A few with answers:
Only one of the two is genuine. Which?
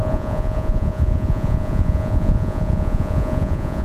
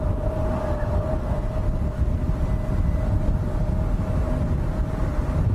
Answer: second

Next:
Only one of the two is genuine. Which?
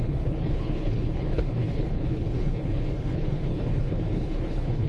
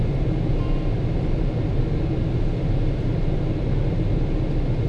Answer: second